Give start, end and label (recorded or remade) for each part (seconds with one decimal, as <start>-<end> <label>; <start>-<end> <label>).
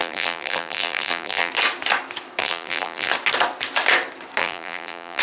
0.0-1.5 remade; 1.5-2.4 recorded; 2.4-3.1 remade; 3.1-4.4 recorded; 4.4-5.2 remade